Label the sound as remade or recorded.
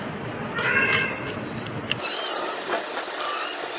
recorded